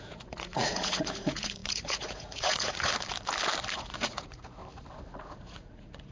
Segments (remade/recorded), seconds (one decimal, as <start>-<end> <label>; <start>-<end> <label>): 0.0-2.9 remade; 2.9-3.7 recorded; 3.7-4.6 remade; 4.6-5.2 recorded; 5.2-6.1 remade